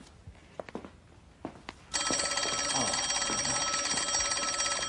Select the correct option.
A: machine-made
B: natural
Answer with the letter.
B